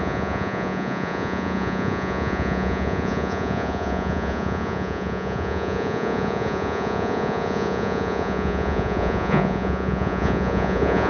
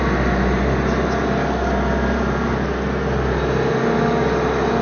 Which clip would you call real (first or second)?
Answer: second